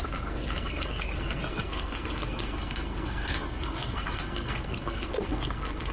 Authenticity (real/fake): fake